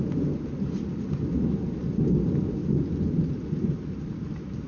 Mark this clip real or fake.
real